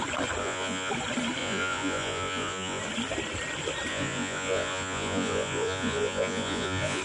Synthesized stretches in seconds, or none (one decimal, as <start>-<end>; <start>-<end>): 0.4-0.9; 1.4-2.8; 3.9-7.0